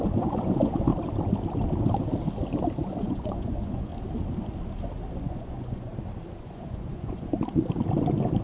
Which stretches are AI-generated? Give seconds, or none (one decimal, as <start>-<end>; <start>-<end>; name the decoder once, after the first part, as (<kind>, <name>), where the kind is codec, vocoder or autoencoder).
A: 0.0-0.9 (vocoder, Vocos); 3.0-3.9; 5.2-5.9; 6.4-7.3